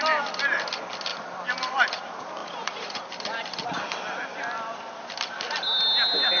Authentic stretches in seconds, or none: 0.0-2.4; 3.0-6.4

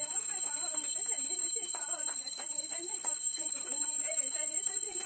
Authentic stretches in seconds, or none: 0.0-1.7

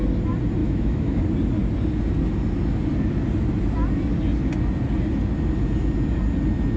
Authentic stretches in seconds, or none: 0.0-0.6; 1.2-6.8

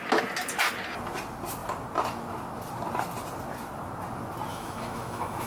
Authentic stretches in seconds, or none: 0.0-4.5

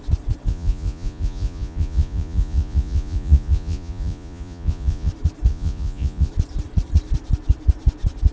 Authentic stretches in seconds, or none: 0.0-0.5; 5.1-5.5; 6.3-8.3